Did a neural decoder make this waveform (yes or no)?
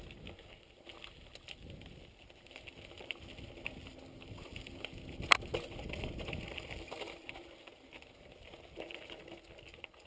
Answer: no